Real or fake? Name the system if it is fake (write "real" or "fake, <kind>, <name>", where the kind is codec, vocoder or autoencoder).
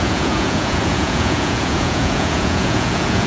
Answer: fake, vocoder, Vocos